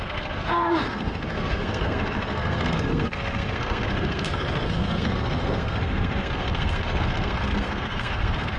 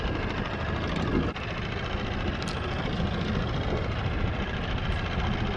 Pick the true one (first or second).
second